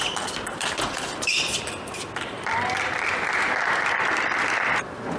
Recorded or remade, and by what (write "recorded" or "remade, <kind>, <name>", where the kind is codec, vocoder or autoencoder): remade, vocoder, BigVGAN v2